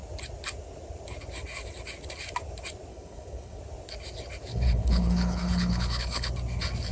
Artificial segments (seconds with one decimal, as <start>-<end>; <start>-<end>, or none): 2.9-3.6; 4.5-6.3